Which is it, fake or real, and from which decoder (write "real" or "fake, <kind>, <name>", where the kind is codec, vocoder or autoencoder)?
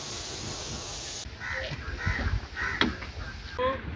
real